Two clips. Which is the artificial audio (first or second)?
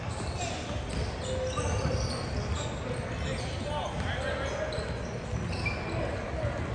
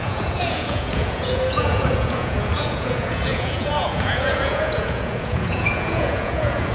second